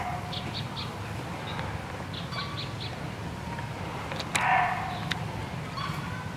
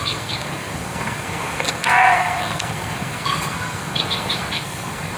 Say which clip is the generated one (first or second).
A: second